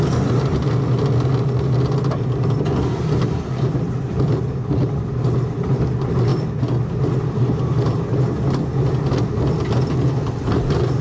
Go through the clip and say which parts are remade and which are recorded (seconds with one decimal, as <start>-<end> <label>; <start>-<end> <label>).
0.0-11.0 recorded